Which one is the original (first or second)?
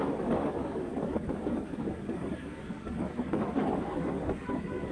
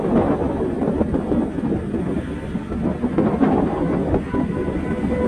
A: second